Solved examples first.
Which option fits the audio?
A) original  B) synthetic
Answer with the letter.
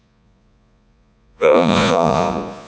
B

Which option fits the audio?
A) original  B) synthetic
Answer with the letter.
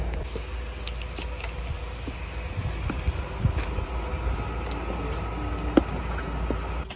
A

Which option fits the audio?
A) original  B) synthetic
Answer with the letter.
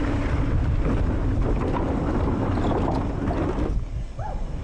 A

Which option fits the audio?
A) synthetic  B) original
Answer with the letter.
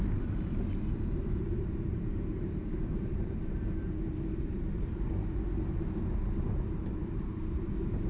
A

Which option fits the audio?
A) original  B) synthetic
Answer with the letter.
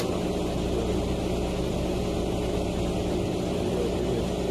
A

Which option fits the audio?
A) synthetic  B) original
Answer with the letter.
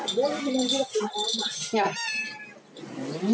B